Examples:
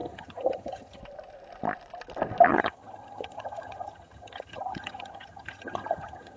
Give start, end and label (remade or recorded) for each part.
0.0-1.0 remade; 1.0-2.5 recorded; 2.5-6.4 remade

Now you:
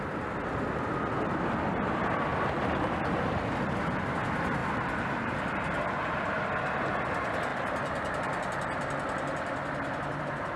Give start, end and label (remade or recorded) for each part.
0.0-4.6 recorded; 4.6-5.6 remade; 5.6-10.6 recorded

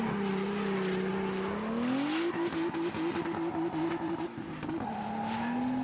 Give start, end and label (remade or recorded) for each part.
0.0-5.8 recorded

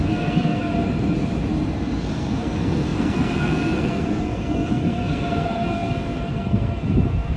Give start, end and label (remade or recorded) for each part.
0.0-0.7 remade; 0.7-2.0 recorded; 2.0-7.4 remade

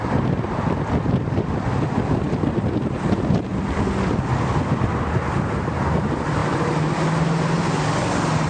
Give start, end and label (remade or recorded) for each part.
0.0-8.5 recorded

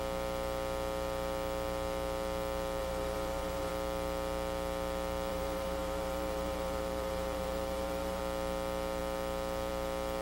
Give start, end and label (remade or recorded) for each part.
0.0-2.8 recorded; 2.8-3.7 remade; 3.7-5.3 recorded; 5.3-8.2 remade; 8.2-10.2 recorded

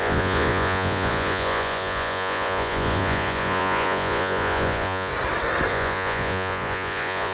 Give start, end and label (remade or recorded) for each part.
0.0-5.1 remade; 5.1-5.7 recorded; 5.7-7.3 remade

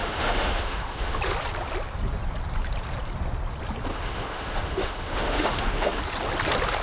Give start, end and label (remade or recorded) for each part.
0.0-1.2 remade; 1.2-3.9 recorded; 3.9-6.0 remade; 6.0-6.8 recorded